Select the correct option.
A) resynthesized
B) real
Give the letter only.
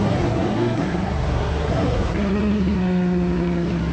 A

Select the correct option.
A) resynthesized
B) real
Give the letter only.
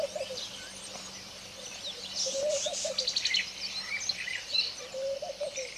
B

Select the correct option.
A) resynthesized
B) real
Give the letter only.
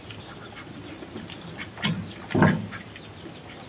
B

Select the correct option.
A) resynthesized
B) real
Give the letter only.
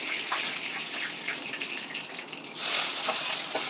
B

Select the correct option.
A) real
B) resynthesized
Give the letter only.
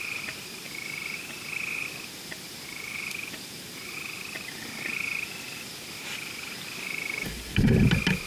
A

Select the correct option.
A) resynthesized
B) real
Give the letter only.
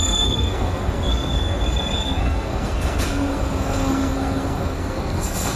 A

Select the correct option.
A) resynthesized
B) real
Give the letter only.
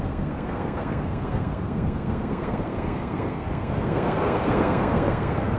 A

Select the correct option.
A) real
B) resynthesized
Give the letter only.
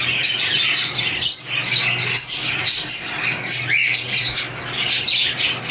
A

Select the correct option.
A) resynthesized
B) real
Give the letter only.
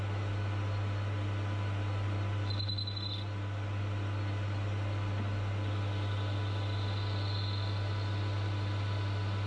B